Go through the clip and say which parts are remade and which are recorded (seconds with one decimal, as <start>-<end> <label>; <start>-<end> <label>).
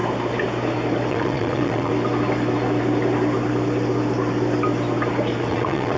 0.0-1.1 recorded; 1.1-1.9 remade; 1.9-5.5 recorded; 5.5-6.0 remade